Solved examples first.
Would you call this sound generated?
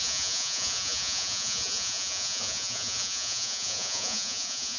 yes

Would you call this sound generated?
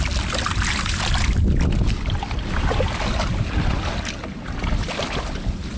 no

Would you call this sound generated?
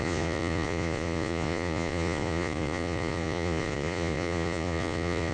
yes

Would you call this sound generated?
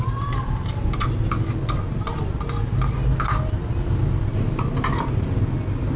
no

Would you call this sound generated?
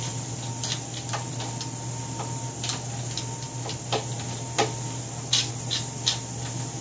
no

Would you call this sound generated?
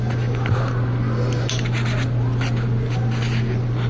no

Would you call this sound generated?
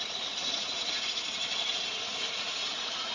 yes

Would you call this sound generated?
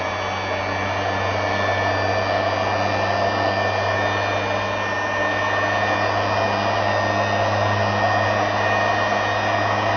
no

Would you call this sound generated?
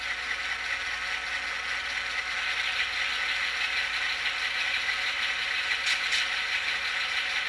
no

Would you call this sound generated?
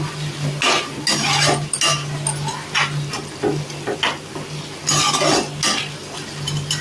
no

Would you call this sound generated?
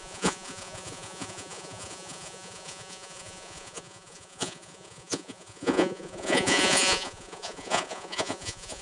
yes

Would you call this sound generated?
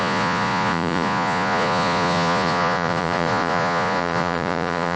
yes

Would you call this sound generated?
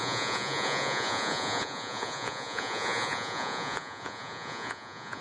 yes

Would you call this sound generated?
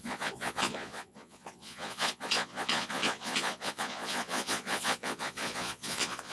yes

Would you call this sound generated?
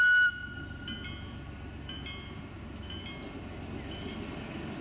no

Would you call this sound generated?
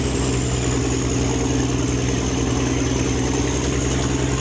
no